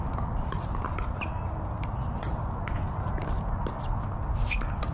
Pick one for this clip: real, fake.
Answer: real